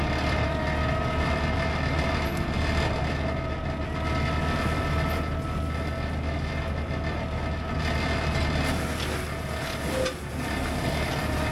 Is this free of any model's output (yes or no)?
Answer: yes